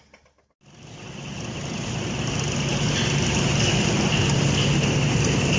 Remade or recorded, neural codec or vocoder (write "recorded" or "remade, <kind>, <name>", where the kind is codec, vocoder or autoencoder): recorded